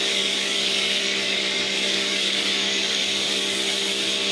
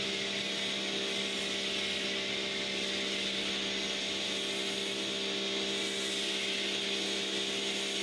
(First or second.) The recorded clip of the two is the second